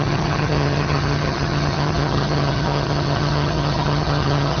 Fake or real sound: fake